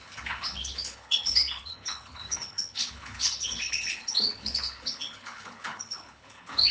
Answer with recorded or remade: remade